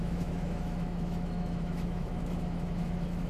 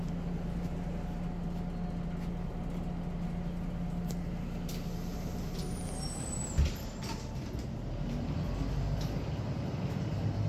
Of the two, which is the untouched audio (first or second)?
second